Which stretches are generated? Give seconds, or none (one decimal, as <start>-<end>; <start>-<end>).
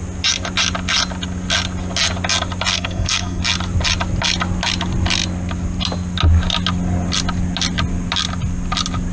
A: 2.7-3.4